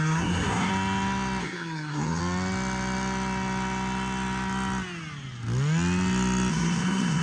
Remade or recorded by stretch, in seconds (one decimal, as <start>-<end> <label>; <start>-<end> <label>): 0.0-0.7 remade; 0.7-1.4 recorded; 1.4-2.2 remade; 2.2-6.5 recorded; 6.5-7.2 remade